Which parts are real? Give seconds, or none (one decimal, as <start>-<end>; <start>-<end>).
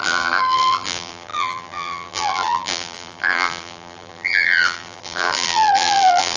none